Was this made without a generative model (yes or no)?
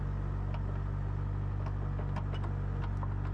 yes